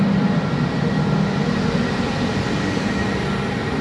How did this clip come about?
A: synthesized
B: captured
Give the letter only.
B